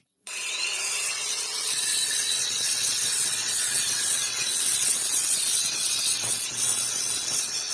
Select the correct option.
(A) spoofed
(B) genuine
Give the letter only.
A